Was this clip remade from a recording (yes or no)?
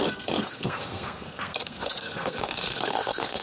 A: yes